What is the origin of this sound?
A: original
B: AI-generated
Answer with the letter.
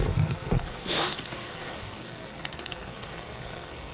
B